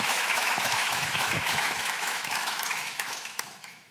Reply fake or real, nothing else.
fake